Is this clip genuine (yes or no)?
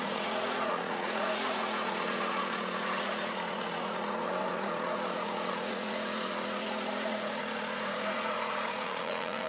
no